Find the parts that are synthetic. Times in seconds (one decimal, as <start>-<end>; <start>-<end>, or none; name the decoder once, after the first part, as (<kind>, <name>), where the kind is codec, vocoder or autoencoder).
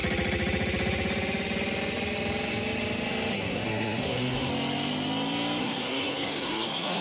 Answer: 3.3-4.5 (codec, SNAC); 5.6-7.0